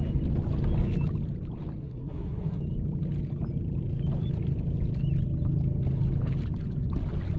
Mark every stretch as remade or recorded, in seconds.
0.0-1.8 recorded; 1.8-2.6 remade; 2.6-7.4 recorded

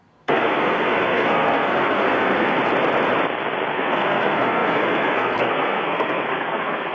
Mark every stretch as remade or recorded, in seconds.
0.0-2.6 remade; 2.6-3.7 recorded; 3.7-6.9 remade

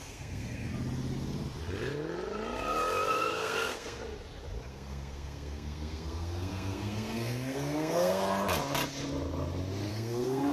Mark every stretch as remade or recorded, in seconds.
0.0-0.7 remade; 0.7-3.1 recorded; 3.1-4.0 remade; 4.0-4.7 recorded; 4.7-8.2 remade; 8.2-9.9 recorded; 9.9-10.5 remade

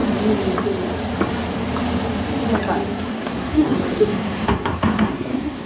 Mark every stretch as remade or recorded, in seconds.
0.0-3.1 recorded; 3.1-5.7 remade

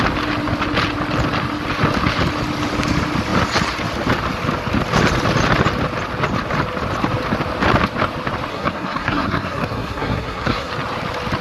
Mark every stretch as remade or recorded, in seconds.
0.0-8.5 recorded; 8.5-10.7 remade; 10.7-11.4 recorded

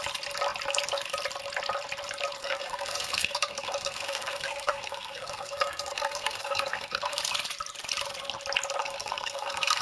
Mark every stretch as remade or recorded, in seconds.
0.0-2.4 recorded; 2.4-7.2 remade; 7.2-8.8 recorded; 8.8-9.8 remade

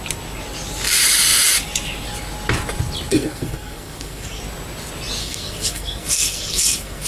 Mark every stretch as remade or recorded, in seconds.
0.0-3.1 recorded; 3.1-4.4 remade; 4.4-5.2 recorded; 5.2-7.1 remade